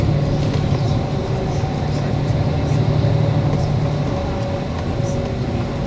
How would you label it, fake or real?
real